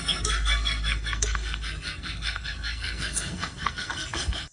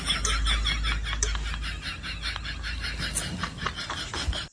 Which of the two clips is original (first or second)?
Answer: second